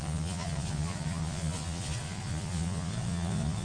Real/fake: fake